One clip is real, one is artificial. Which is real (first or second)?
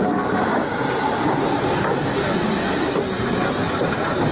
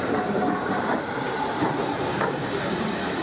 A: first